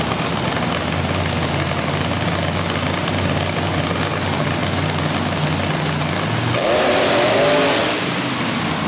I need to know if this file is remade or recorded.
recorded